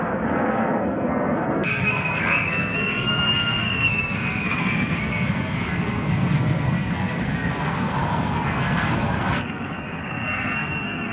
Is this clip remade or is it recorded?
remade